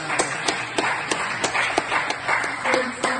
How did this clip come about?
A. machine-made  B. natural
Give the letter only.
A